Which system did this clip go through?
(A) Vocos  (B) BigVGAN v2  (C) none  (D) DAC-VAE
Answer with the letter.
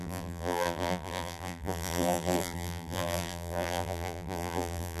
B